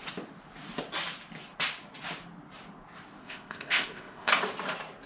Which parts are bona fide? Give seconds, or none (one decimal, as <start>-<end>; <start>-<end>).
0.0-3.2; 4.3-5.1